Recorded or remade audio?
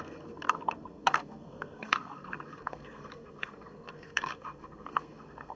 remade